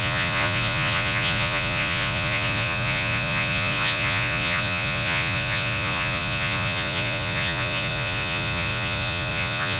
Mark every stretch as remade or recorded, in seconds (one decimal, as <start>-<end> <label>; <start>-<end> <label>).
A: 0.0-9.8 remade